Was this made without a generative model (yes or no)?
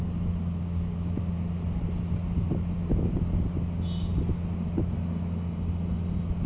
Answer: yes